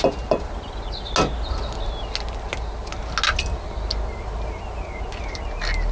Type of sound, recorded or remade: recorded